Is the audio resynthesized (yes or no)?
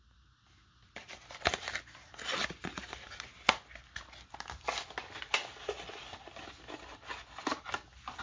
no